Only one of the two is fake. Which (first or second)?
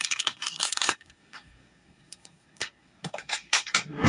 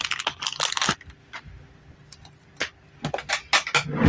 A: first